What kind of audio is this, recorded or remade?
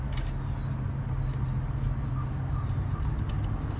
recorded